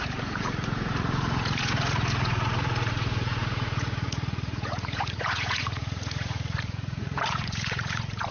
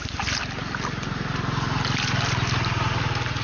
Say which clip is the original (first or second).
second